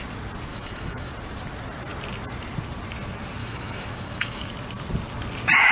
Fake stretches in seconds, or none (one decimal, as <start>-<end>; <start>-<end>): 0.5-1.1; 3.4-4.5